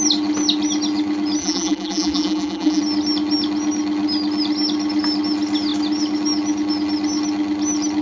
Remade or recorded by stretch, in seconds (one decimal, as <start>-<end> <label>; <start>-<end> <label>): 0.0-1.4 recorded; 1.4-2.8 remade; 2.8-8.0 recorded